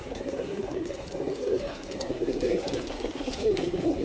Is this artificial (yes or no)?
yes